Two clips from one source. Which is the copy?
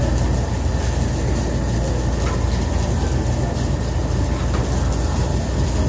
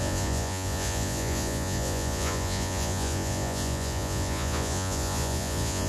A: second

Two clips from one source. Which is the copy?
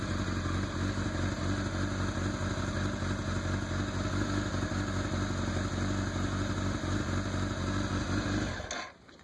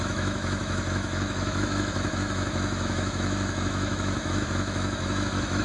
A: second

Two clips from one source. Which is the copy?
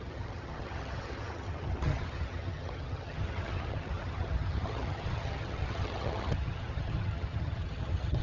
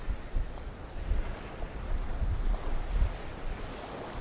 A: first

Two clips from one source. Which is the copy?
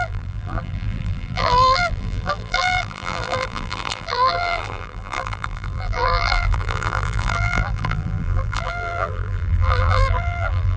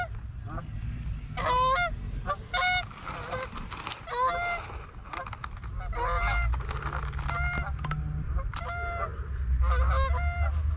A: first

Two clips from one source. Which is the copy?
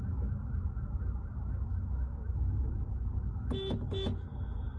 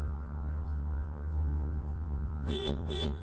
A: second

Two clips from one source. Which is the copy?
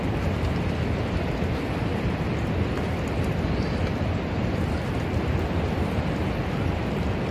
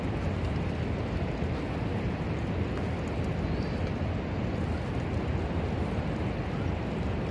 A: first